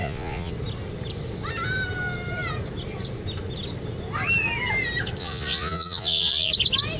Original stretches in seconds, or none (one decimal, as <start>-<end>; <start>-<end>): 0.5-5.2; 6.5-7.0